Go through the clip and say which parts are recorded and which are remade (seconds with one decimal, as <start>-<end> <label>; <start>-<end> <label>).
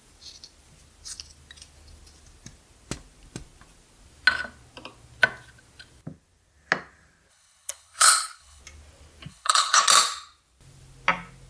0.0-7.3 recorded; 7.3-8.6 remade; 8.6-9.3 recorded; 9.3-9.8 remade; 9.8-11.5 recorded